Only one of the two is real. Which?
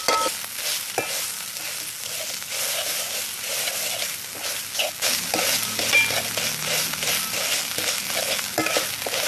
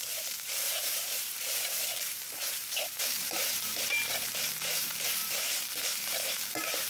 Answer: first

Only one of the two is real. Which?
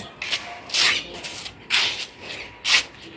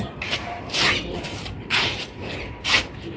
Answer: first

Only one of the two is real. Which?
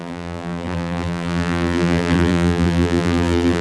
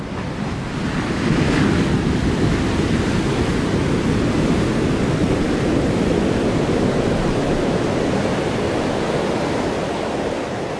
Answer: second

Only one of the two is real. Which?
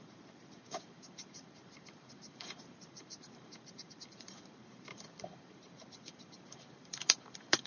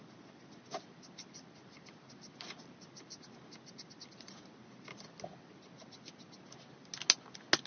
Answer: second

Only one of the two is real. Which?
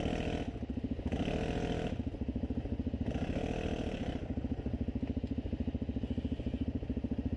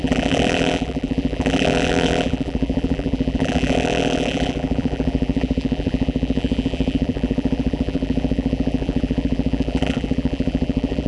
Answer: first